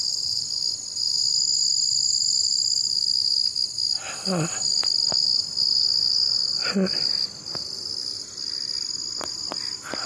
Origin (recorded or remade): recorded